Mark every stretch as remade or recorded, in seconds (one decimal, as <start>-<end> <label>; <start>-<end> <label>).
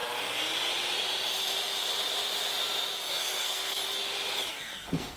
0.0-3.1 recorded; 3.1-3.8 remade; 3.8-4.5 recorded; 4.5-5.2 remade